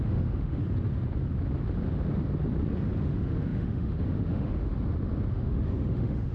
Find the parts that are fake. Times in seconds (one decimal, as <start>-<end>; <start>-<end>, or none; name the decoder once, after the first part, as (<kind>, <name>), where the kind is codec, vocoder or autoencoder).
0.0-0.6 (autoencoder, DAC-VAE); 3.0-4.7; 5.3-6.3

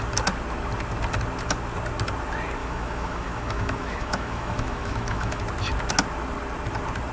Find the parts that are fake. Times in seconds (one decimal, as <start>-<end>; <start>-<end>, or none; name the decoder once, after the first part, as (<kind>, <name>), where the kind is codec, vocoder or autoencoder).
2.6-5.4 (autoencoder, DAC-VAE)

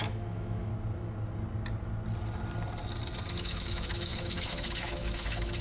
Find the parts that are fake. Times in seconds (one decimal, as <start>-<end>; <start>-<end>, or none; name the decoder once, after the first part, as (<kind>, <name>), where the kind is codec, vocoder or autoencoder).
0.0-0.7 (autoencoder, DAC-VAE); 3.4-5.6

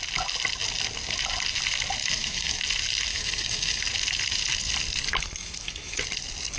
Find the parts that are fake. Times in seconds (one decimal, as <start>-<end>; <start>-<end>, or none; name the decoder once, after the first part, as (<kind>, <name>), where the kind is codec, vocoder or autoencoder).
2.0-2.6 (autoencoder, DAC-VAE); 3.1-3.8; 5.4-6.0

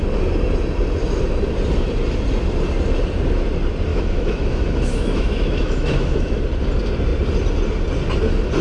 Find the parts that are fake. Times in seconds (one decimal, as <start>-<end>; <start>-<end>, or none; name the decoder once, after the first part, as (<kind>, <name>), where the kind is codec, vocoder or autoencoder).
3.9-6.4 (autoencoder, DAC-VAE)

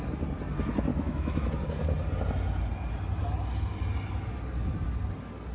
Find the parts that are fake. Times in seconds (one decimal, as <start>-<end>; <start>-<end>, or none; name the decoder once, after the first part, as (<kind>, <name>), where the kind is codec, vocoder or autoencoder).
0.9-1.5 (autoencoder, DAC-VAE)

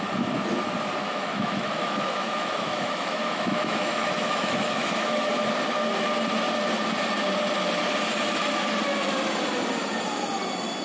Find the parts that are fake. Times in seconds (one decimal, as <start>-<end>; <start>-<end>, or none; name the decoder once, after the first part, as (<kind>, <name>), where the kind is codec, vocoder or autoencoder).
1.0-5.3 (autoencoder, DAC-VAE)

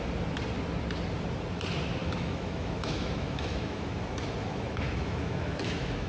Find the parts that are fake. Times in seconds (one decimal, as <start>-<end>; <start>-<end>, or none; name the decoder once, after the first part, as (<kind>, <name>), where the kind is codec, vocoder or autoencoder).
2.0-6.1 (autoencoder, DAC-VAE)